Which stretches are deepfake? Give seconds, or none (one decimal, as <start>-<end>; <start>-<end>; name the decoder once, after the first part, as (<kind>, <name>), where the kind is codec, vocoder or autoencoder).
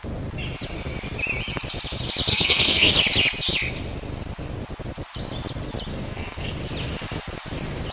2.3-2.9 (codec, SNAC); 5.9-6.5